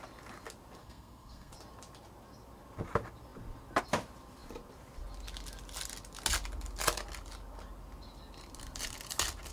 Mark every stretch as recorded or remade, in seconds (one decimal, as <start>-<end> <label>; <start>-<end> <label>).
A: 0.0-0.8 recorded; 0.8-1.5 remade; 1.5-9.5 recorded